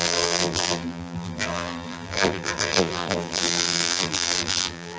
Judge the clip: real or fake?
fake